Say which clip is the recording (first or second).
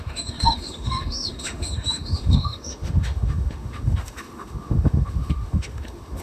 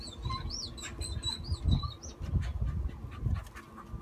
second